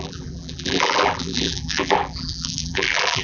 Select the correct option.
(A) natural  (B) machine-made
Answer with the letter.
B